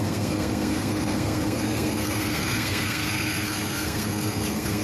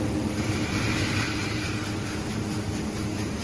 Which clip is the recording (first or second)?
second